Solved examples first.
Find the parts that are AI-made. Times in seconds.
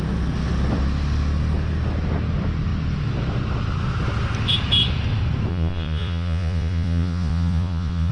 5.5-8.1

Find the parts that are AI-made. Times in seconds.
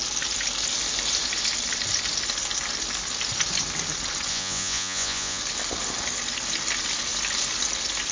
4.3-5.4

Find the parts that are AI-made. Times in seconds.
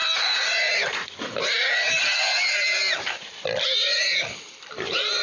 0.0-5.2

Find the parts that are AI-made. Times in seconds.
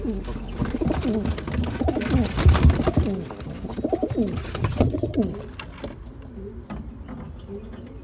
4.6-5.2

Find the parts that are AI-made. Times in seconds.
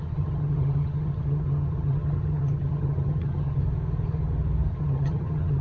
0.0-3.6; 4.7-5.6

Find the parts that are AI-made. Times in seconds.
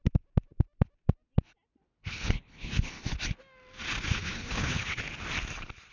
2.0-2.9; 4.1-5.0